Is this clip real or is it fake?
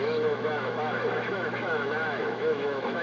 fake